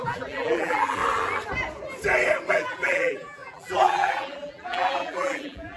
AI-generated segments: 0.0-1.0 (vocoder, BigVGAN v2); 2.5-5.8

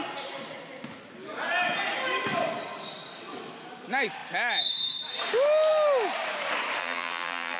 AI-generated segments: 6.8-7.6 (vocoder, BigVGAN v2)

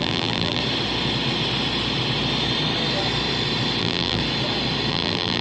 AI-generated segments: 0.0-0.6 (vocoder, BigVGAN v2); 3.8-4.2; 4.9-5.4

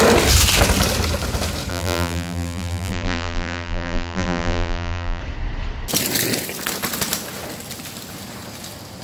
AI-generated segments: 1.7-5.2 (vocoder, BigVGAN v2)

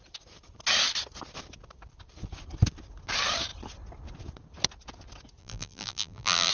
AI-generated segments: 5.4-6.5 (vocoder, BigVGAN v2)

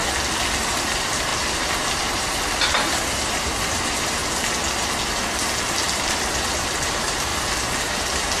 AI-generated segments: 0.6-4.2 (vocoder, BigVGAN v2); 5.6-7.3; 7.8-8.4